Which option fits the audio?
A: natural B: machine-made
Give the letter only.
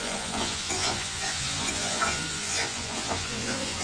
B